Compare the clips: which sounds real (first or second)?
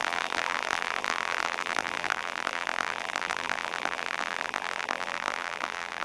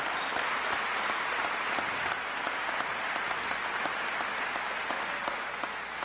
second